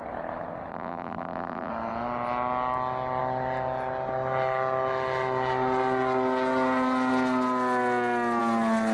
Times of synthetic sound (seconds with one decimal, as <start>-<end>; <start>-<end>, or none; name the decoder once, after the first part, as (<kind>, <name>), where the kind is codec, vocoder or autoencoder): 0.7-1.7 (vocoder, BigVGAN v2)

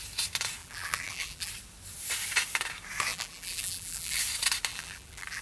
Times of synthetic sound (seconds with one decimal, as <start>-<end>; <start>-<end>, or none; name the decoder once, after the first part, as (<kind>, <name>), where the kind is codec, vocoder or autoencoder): 0.6-1.5 (vocoder, BigVGAN v2); 3.1-4.2; 4.7-5.4

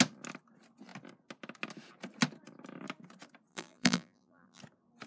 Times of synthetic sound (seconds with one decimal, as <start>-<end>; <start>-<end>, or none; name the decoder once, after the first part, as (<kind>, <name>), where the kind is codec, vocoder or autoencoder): 3.5-4.6 (vocoder, BigVGAN v2)

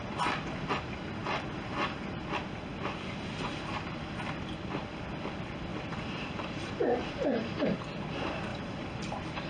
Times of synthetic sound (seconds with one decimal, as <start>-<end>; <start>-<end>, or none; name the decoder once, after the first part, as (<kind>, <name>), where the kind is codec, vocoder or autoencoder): 5.7-6.7 (vocoder, BigVGAN v2); 8.5-9.5

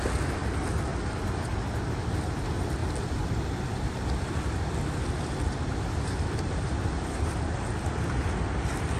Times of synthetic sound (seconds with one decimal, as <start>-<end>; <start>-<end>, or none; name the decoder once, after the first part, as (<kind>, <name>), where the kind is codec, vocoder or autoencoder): 2.8-7.9 (vocoder, BigVGAN v2)

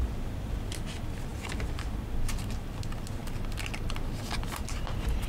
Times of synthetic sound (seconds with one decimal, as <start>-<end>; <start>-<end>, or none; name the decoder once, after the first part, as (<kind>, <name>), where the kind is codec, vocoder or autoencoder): none

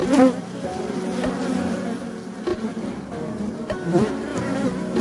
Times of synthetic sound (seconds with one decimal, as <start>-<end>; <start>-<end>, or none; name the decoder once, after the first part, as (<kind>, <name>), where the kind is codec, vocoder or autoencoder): 0.0-1.0 (vocoder, BigVGAN v2); 2.5-3.7

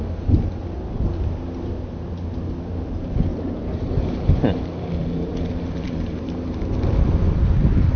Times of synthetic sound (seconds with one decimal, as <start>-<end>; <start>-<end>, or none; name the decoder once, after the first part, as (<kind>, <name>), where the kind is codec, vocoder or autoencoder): 3.3-4.6 (vocoder, BigVGAN v2); 5.0-6.9